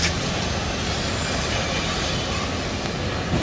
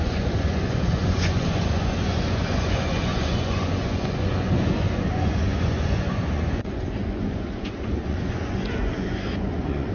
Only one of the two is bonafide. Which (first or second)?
first